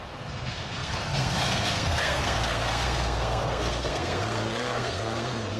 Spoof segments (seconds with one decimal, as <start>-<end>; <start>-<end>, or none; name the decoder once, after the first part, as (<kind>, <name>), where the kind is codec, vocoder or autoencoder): 0.0-5.6 (codec, SNAC)